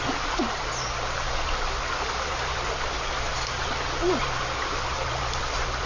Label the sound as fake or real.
real